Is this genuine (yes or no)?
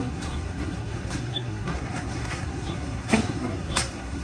no